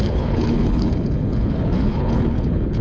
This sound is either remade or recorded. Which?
remade